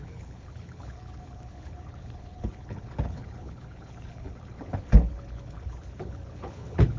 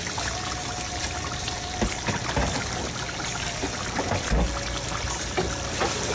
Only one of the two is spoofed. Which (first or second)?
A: first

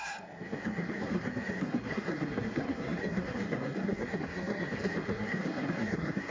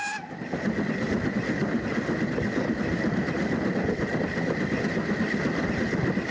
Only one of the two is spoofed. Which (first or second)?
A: first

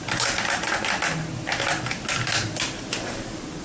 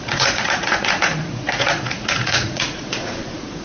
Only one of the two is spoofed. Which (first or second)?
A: second